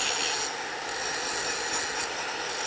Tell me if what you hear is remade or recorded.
recorded